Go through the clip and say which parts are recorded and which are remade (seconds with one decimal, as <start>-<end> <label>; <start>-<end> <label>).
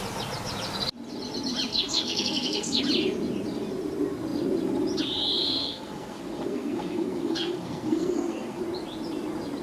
0.0-1.7 recorded; 1.7-2.8 remade; 2.8-5.4 recorded; 5.4-8.6 remade; 8.6-9.6 recorded